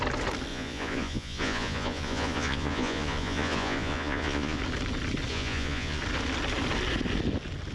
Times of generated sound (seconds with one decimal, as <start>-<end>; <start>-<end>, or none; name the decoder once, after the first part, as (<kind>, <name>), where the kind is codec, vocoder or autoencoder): 0.5-4.6 (vocoder, Vocos); 5.3-6.0